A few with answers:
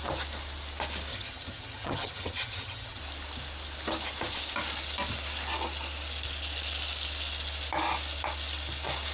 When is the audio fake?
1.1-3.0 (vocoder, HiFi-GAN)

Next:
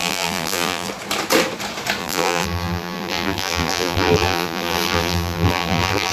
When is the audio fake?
0.0-0.9 (vocoder, BigVGAN v2); 2.0-6.1

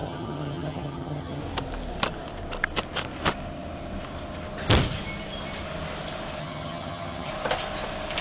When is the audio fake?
0.0-1.4 (vocoder, HiFi-GAN); 6.4-7.3

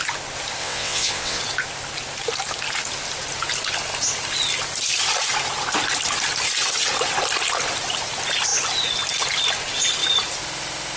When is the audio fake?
0.6-1.4 (vocoder, WaveNeXt)

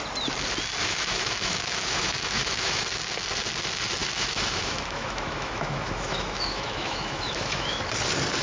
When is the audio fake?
0.8-2.8 (autoencoder, DAC-VAE); 4.0-7.8

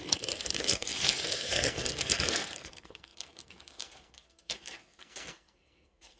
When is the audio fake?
0.0-6.2 (codec, SNAC)

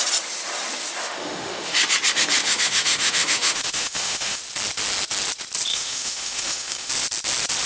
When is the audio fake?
1.0-1.7 (autoencoder, DAC-VAE); 2.4-4.4; 5.7-6.9